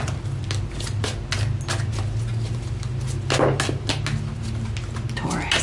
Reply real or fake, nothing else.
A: real